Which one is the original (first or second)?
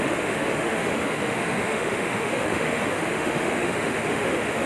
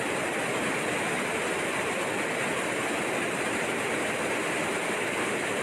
second